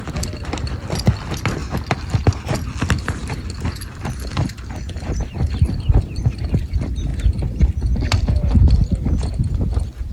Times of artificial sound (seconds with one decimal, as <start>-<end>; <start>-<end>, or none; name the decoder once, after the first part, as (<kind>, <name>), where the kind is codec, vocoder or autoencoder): 1.6-2.4 (vocoder, BigVGAN v2); 3.2-5.9

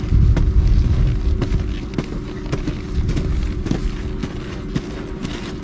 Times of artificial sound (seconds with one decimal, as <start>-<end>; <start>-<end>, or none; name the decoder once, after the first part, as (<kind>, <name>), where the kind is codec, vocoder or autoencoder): none

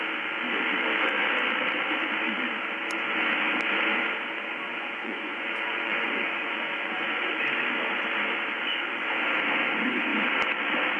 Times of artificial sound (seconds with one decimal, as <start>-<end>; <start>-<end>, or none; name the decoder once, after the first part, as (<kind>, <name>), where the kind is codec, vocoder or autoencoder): 4.7-7.3 (vocoder, Vocos)

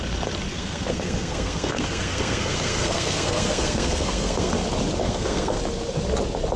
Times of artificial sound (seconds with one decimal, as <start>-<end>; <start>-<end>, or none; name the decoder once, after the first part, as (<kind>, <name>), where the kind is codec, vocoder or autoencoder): 0.5-4.5 (codec, SNAC); 5.0-5.6